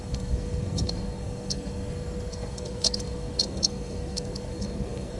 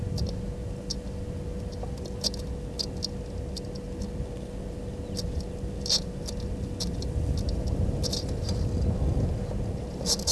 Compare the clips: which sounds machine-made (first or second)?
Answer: first